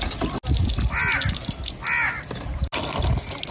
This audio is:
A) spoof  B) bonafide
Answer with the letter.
B